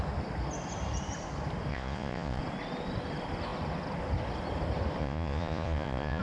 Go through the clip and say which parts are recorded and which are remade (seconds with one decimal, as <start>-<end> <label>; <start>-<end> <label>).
0.0-1.7 recorded; 1.7-2.4 remade; 2.4-5.0 recorded; 5.0-6.2 remade